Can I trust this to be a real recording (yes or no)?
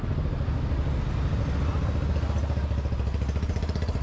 yes